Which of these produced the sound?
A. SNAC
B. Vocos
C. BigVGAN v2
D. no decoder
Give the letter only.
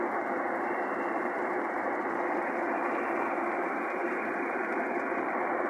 C